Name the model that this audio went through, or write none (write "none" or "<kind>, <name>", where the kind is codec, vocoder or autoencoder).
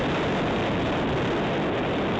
none